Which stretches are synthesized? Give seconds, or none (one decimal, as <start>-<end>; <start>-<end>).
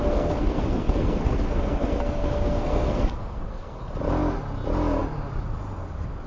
0.0-3.8